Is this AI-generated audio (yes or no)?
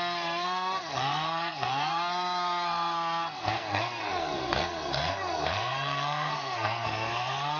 yes